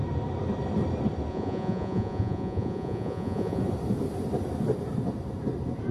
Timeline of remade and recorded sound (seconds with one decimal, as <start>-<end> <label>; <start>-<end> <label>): 0.0-1.3 recorded; 1.3-3.6 remade; 3.6-5.9 recorded